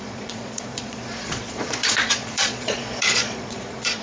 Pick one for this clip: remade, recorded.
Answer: remade